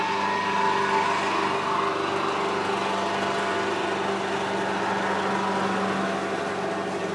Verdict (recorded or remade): recorded